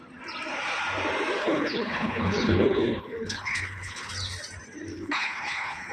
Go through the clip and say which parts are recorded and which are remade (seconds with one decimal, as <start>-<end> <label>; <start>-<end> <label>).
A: 0.0-1.4 recorded; 1.4-4.1 remade; 4.1-4.9 recorded; 4.9-5.9 remade

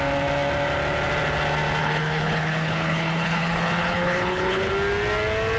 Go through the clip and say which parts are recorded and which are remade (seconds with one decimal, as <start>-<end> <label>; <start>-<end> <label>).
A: 0.0-1.8 recorded; 1.8-4.7 remade; 4.7-5.6 recorded

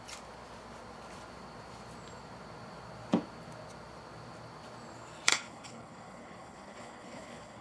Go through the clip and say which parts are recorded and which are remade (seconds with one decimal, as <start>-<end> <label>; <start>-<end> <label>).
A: 0.0-5.3 recorded; 5.3-7.6 remade

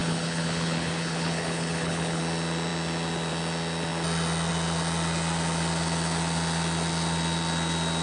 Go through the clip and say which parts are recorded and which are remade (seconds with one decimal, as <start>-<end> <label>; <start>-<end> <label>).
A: 0.0-2.2 remade; 2.2-8.0 recorded

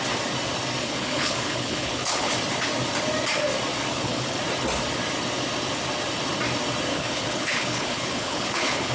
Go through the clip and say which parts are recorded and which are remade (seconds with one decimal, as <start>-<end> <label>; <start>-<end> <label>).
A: 0.0-0.8 recorded; 0.8-2.3 remade; 2.3-3.9 recorded; 3.9-4.4 remade; 4.4-6.9 recorded; 6.9-8.9 remade

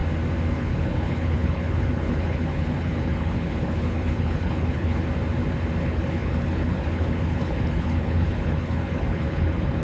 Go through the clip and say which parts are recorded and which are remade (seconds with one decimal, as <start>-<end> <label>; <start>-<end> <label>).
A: 0.0-0.5 recorded; 0.5-5.0 remade; 5.0-5.8 recorded; 5.8-9.8 remade

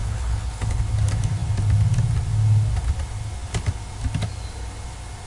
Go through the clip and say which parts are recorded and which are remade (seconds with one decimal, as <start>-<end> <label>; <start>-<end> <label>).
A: 0.0-0.8 remade; 0.8-5.3 recorded

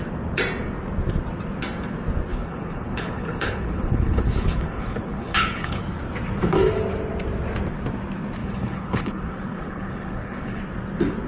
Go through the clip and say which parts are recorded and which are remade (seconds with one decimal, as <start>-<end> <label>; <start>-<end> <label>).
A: 0.0-2.3 recorded; 2.3-5.8 remade; 5.8-8.4 recorded; 8.4-10.6 remade; 10.6-11.3 recorded